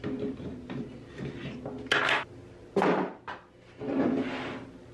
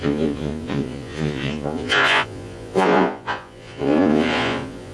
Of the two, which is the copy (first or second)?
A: second